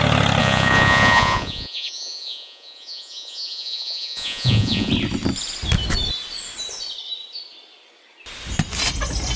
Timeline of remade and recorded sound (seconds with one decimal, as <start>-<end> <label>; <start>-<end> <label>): 0.0-0.4 recorded; 0.4-4.9 remade; 4.9-9.4 recorded